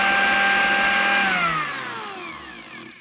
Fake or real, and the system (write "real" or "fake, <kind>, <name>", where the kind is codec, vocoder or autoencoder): real